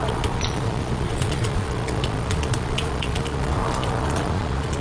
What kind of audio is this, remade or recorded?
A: remade